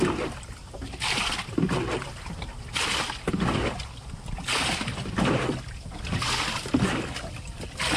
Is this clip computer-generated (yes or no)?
no